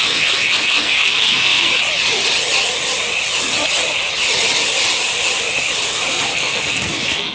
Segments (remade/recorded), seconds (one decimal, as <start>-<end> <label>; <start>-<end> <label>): 0.0-1.7 remade; 1.7-6.1 recorded; 6.1-7.3 remade